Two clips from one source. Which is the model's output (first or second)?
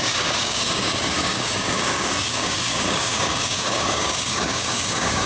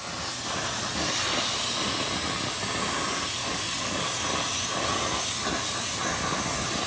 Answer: first